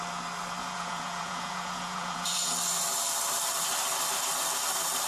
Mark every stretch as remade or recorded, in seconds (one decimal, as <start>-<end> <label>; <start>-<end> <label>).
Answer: 0.0-0.6 recorded; 0.6-2.5 remade; 2.5-5.1 recorded